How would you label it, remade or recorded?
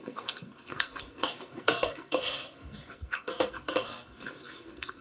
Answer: remade